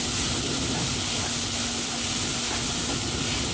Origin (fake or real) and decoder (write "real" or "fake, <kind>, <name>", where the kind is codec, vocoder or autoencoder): real